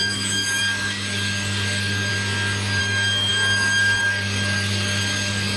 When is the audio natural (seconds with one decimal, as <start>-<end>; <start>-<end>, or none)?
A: 2.1-2.8